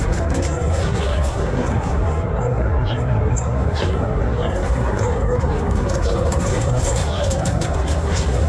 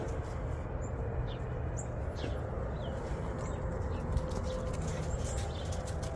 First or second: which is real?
second